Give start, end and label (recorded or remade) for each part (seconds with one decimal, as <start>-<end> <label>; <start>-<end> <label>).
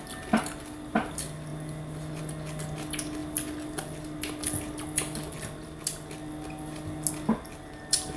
0.0-8.2 recorded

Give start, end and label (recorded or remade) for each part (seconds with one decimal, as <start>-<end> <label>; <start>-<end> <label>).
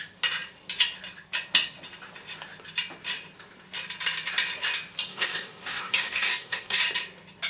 0.0-5.1 recorded; 5.1-6.8 remade; 6.8-7.5 recorded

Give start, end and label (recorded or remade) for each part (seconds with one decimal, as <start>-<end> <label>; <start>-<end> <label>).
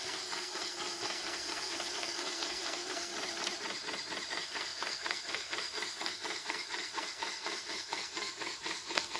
0.0-3.1 remade; 3.1-4.3 recorded; 4.3-9.2 remade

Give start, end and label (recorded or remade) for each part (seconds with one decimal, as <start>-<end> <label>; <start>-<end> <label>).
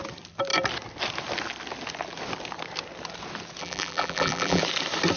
0.0-3.6 recorded; 3.6-4.6 remade; 4.6-5.2 recorded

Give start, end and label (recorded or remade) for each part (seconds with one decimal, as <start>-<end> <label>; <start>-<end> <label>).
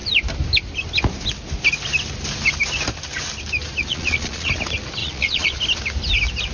0.0-3.9 recorded; 3.9-4.5 remade; 4.5-5.0 recorded; 5.0-5.6 remade; 5.6-6.5 recorded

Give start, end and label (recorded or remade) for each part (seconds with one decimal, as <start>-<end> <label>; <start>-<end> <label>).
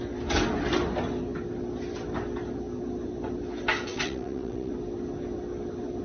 0.0-3.9 recorded; 3.9-4.7 remade; 4.7-6.0 recorded